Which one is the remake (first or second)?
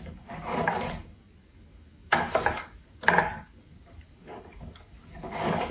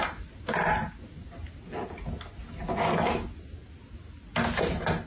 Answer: first